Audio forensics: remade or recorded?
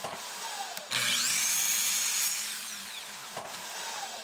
recorded